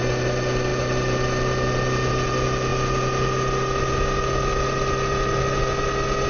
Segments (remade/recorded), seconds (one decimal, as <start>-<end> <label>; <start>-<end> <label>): 0.0-6.3 recorded